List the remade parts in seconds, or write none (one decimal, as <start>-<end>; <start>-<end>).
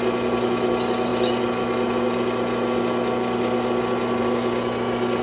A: none